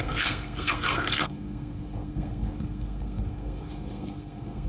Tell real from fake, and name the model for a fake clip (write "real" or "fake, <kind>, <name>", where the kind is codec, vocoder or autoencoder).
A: fake, codec, SNAC